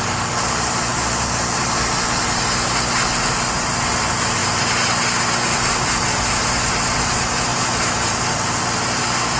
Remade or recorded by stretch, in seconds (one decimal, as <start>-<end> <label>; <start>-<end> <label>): 0.0-9.4 recorded